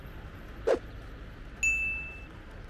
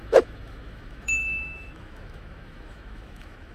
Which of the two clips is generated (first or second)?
second